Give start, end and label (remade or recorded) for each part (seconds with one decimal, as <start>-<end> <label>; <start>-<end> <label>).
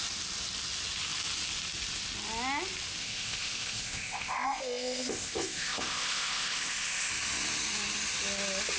0.0-3.0 recorded; 3.0-7.1 remade; 7.1-8.8 recorded